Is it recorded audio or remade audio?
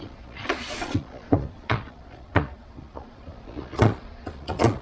remade